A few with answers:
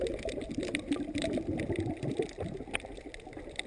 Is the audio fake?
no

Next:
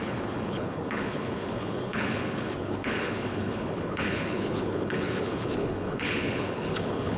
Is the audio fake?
yes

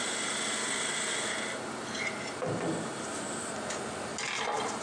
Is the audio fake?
no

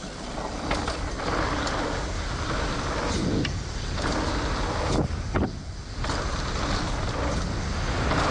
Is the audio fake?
no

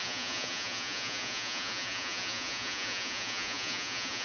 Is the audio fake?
yes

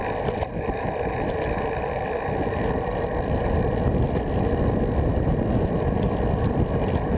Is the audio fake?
no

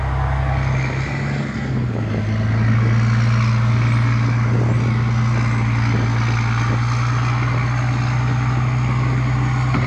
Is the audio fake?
no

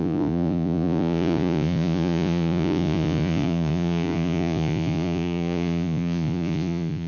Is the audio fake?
yes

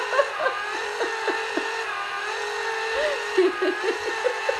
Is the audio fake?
no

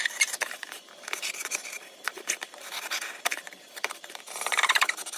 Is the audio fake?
yes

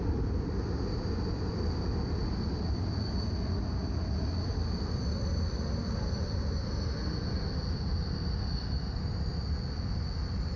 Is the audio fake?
no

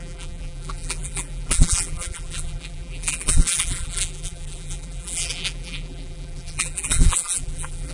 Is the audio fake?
yes